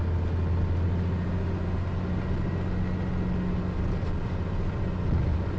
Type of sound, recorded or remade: recorded